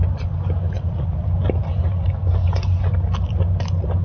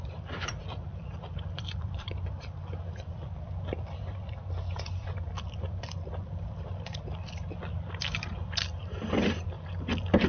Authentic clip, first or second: first